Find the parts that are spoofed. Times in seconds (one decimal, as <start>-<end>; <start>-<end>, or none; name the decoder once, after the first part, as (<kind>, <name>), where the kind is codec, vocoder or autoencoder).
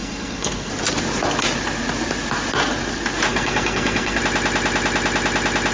0.0-0.7 (codec, SNAC); 3.3-4.2